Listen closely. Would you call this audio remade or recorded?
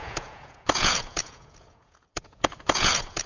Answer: remade